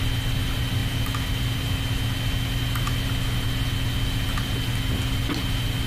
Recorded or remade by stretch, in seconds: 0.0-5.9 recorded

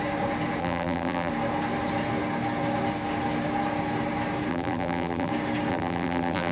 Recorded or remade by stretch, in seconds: 0.0-0.6 recorded; 0.6-1.3 remade; 1.3-4.5 recorded; 4.5-5.3 remade; 5.3-5.7 recorded; 5.7-6.5 remade

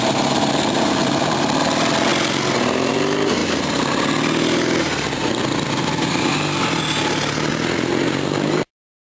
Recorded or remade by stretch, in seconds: 0.0-2.1 remade; 2.1-2.9 recorded; 2.9-3.4 remade; 3.4-7.5 recorded; 7.5-9.2 remade

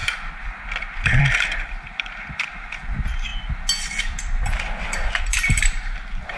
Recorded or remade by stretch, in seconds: 0.0-3.3 remade; 3.3-4.0 recorded; 4.0-6.4 remade

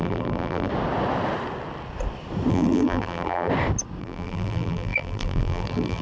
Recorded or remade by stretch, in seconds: 0.0-0.7 remade; 0.7-2.5 recorded; 2.5-3.5 remade; 3.5-4.0 recorded; 4.0-6.0 remade

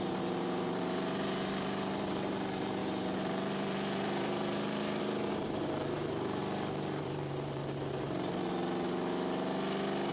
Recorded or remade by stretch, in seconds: 0.0-6.4 remade; 6.4-7.0 recorded; 7.0-7.6 remade; 7.6-10.1 recorded